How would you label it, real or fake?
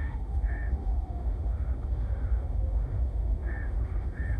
fake